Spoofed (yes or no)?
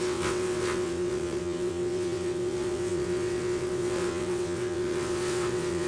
yes